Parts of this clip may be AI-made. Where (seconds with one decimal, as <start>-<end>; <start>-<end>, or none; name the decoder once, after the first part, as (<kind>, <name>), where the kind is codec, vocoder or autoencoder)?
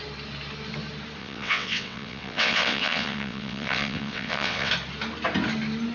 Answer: 1.2-4.7 (vocoder, WaveNeXt)